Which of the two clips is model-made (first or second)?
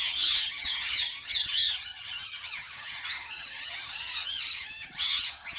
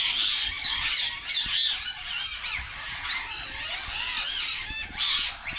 first